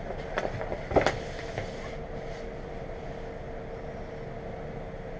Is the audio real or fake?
real